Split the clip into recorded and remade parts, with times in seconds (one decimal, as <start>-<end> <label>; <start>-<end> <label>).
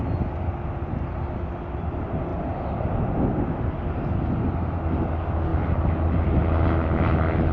0.0-7.5 recorded